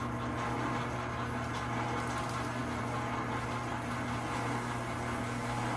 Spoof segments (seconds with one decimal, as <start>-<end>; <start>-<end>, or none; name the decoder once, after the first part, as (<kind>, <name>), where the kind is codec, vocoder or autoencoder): none